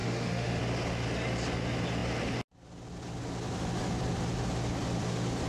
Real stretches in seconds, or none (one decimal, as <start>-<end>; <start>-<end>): 0.6-5.5